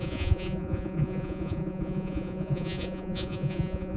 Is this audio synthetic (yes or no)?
yes